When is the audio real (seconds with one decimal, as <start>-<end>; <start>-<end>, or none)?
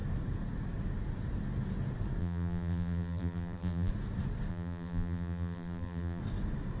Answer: 0.0-2.2; 3.9-4.5; 6.2-6.8